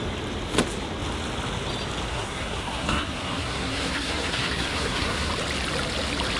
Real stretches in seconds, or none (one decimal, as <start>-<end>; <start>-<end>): 0.0-2.1; 5.3-6.4